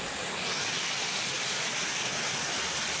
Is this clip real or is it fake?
real